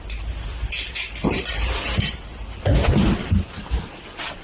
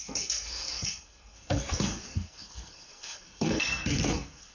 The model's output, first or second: second